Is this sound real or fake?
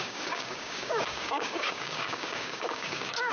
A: fake